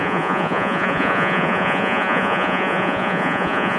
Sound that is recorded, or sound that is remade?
remade